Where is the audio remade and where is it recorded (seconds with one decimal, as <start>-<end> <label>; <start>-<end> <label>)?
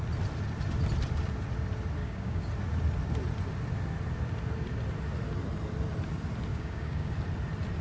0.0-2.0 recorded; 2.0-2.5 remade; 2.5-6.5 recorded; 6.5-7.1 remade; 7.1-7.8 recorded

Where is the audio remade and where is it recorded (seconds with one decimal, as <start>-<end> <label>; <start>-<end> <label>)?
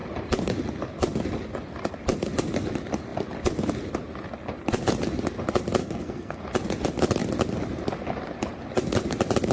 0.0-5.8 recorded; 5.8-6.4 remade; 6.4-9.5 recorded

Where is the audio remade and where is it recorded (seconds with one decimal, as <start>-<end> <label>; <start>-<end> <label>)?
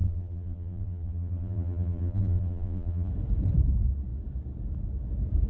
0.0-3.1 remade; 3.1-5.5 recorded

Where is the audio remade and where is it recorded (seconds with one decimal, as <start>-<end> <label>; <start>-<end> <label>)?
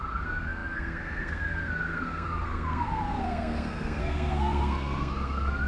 0.0-5.7 remade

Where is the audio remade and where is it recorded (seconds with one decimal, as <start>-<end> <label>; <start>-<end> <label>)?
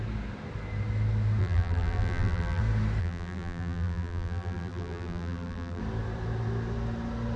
0.0-1.4 recorded; 1.4-2.6 remade; 2.6-3.0 recorded; 3.0-5.8 remade; 5.8-7.4 recorded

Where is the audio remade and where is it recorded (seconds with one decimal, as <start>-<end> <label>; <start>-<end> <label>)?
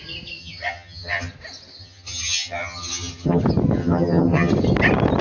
0.0-0.4 recorded; 0.4-1.3 remade; 1.3-1.8 recorded; 1.8-3.4 remade; 3.4-3.8 recorded; 3.8-4.5 remade; 4.5-5.2 recorded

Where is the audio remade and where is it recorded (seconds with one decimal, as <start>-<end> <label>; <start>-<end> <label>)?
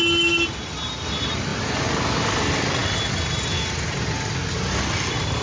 0.0-5.4 recorded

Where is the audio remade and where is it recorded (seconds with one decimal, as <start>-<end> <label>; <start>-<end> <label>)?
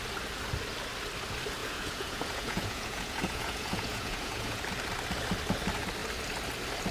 0.0-1.6 recorded; 1.6-4.6 remade; 4.6-6.9 recorded